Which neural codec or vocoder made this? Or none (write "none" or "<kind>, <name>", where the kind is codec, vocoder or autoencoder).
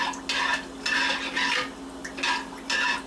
none